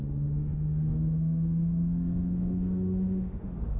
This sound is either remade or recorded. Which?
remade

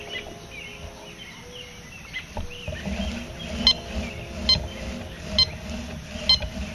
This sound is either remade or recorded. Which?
recorded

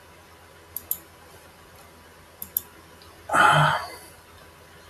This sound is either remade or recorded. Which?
recorded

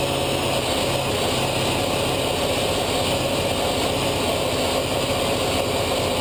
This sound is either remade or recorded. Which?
recorded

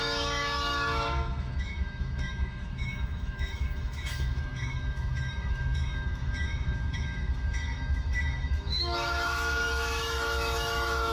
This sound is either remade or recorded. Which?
remade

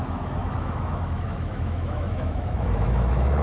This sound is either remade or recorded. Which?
remade